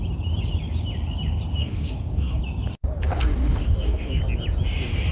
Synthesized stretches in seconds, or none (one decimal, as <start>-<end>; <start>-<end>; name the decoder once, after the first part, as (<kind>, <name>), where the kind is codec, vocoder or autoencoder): 1.6-2.4 (codec, DAC); 3.1-4.2